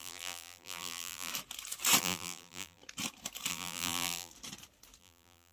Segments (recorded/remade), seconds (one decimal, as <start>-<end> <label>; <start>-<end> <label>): 0.0-1.3 remade; 1.3-2.0 recorded; 2.0-2.8 remade; 2.8-3.5 recorded; 3.5-4.3 remade; 4.3-5.0 recorded; 5.0-5.5 remade